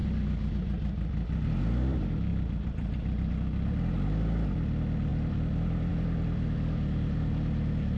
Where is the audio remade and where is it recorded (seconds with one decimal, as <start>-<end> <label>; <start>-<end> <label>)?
0.0-2.3 recorded; 2.3-3.3 remade; 3.3-5.1 recorded; 5.1-5.9 remade; 5.9-8.0 recorded